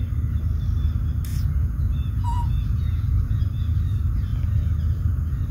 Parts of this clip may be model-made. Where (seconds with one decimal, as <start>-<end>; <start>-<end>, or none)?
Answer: 1.3-3.4